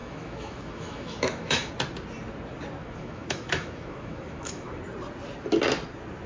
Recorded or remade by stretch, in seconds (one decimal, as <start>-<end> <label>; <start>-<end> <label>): 0.0-1.7 remade; 1.7-2.8 recorded; 2.8-4.8 remade; 4.8-6.3 recorded